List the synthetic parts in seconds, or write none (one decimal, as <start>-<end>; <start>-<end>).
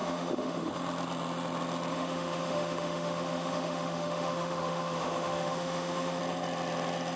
0.0-0.7; 1.9-6.2